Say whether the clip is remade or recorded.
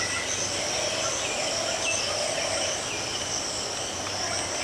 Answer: recorded